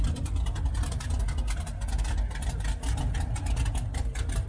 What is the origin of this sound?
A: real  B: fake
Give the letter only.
A